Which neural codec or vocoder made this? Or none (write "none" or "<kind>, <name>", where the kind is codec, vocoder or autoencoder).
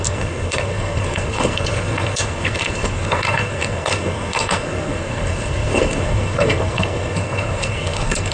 codec, SNAC